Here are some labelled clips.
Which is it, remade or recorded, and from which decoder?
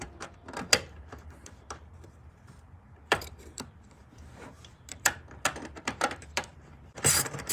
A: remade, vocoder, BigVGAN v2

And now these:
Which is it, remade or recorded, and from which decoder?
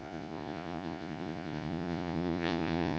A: remade, vocoder, Vocos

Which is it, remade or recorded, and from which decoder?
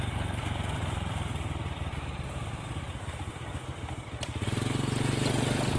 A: recorded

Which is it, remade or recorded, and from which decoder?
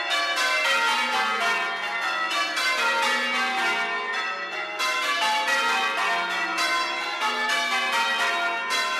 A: recorded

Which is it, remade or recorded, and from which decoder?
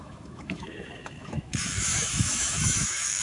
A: remade, autoencoder, DAC-VAE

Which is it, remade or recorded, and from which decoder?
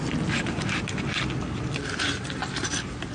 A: recorded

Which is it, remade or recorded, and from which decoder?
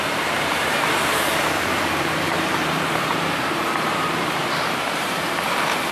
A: remade, vocoder, BigVGAN v2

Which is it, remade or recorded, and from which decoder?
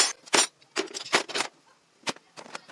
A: recorded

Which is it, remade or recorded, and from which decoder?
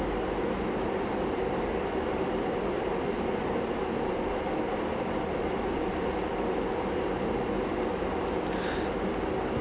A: recorded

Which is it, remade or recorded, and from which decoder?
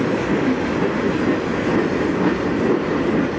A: recorded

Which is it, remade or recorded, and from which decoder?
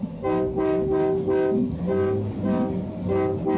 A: recorded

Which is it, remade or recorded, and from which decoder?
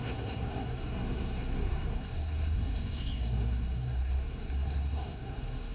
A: remade, codec, SNAC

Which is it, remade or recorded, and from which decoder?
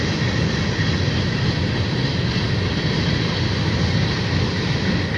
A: recorded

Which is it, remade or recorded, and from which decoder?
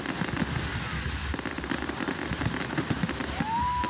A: recorded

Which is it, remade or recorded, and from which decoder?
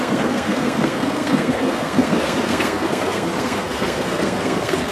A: remade, codec, SNAC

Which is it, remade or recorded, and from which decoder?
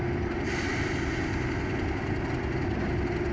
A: recorded